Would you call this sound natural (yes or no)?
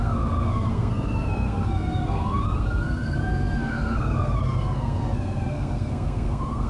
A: no